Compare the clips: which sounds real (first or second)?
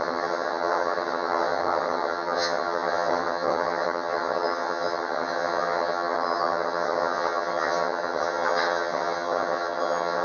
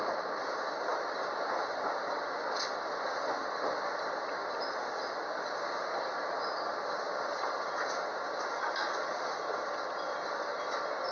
second